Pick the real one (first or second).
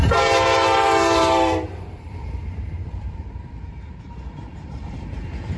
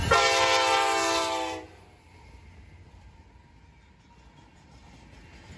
second